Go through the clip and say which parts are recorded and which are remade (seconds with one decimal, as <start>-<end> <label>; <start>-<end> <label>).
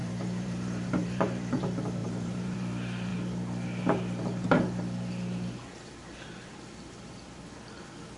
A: 0.0-1.6 remade; 1.6-2.0 recorded; 2.0-2.6 remade; 2.6-8.2 recorded